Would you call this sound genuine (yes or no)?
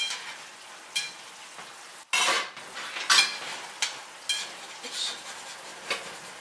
yes